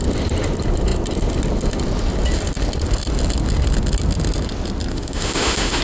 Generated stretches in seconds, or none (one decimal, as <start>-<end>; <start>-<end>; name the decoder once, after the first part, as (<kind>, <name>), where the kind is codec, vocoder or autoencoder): 4.9-5.8 (autoencoder, DAC-VAE)